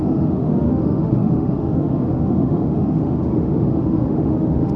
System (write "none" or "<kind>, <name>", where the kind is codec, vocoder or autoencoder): autoencoder, DAC-VAE